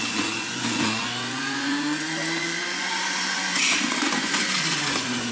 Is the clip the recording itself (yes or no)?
no